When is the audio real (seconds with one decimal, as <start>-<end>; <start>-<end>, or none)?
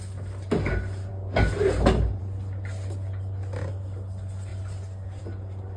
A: 0.0-5.8